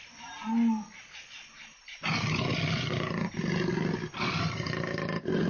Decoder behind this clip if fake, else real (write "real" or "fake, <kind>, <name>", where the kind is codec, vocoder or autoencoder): real